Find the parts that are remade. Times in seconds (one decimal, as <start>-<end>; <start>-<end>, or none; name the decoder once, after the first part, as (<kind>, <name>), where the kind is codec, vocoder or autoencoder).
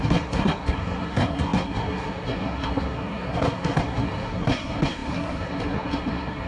0.0-6.5 (codec, SNAC)